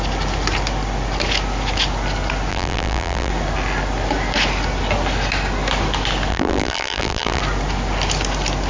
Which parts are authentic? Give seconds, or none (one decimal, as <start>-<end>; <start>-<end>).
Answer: 0.0-2.5; 3.3-6.3; 7.4-8.7